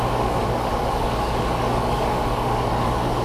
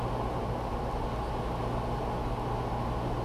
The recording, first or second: second